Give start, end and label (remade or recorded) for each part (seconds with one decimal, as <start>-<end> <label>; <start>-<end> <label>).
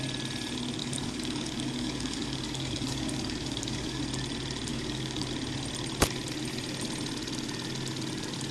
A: 0.0-0.8 recorded; 0.8-4.0 remade; 4.0-4.7 recorded; 4.7-5.3 remade; 5.3-8.5 recorded